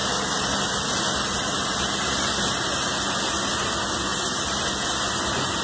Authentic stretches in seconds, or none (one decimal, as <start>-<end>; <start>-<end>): 0.0-5.6